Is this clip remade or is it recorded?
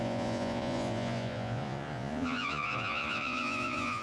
remade